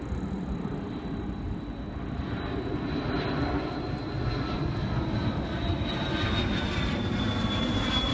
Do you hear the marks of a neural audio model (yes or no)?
no